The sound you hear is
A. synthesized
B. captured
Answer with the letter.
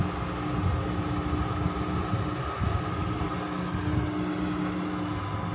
B